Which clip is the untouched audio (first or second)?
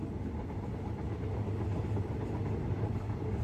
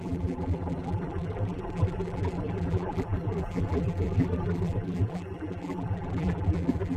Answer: first